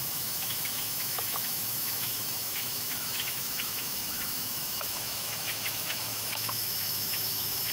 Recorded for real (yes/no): no